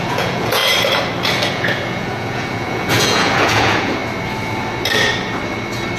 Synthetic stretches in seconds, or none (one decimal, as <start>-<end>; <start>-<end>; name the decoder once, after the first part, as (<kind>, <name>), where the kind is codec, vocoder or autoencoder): 0.0-0.6 (vocoder, Vocos); 1.5-4.0